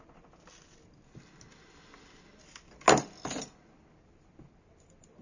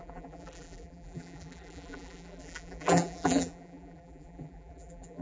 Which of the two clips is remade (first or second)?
second